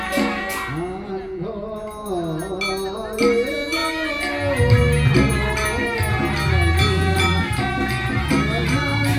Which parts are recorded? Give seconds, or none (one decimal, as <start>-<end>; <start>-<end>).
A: 0.0-9.2